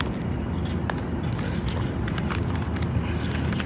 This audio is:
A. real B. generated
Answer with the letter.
A